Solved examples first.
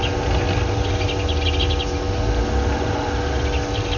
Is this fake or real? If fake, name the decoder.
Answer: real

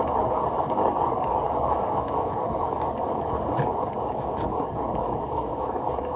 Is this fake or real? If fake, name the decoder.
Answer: fake, codec, DAC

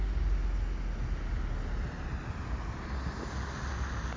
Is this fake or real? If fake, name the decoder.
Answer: real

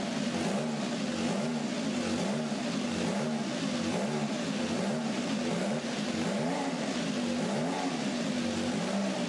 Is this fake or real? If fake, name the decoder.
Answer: real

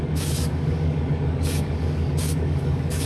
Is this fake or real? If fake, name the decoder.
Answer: fake, codec, DAC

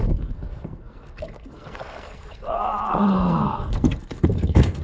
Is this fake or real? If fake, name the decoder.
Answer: fake, codec, SNAC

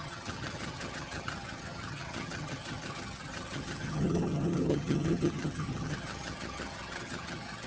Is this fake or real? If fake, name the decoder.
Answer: fake, vocoder, HiFi-GAN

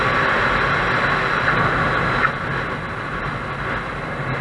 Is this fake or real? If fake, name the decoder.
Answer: real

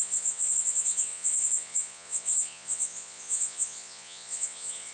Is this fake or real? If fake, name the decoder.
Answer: fake, vocoder, Vocos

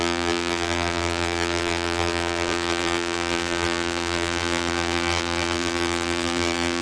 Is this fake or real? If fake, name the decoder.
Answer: fake, vocoder, BigVGAN v2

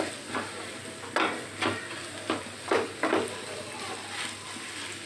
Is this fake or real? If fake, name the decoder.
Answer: real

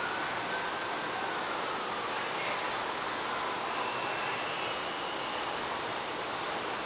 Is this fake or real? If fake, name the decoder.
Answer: real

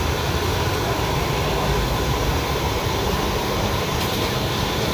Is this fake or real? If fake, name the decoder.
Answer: fake, vocoder, BigVGAN v2